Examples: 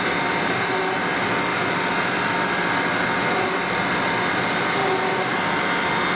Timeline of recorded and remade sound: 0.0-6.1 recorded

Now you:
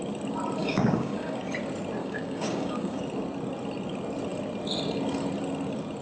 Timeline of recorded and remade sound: 0.0-0.6 recorded; 0.6-1.4 remade; 1.4-2.0 recorded; 2.0-3.0 remade; 3.0-6.0 recorded

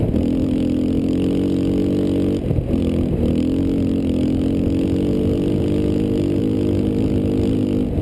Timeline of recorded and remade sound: 0.0-8.0 recorded

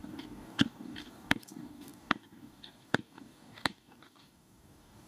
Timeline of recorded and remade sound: 0.0-5.1 remade

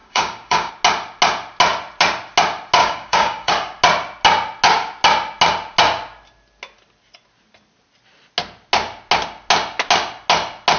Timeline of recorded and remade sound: 0.0-0.7 remade; 0.7-2.8 recorded; 2.8-3.5 remade; 3.5-10.8 recorded

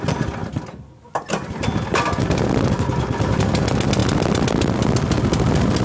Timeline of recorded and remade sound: 0.0-5.8 recorded

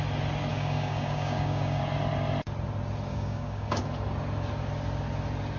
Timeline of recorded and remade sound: 0.0-0.5 recorded; 0.5-1.8 remade; 1.8-3.1 recorded; 3.1-3.8 remade; 3.8-5.6 recorded